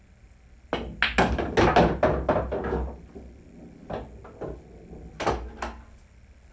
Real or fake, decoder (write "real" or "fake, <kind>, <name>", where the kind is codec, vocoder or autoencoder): real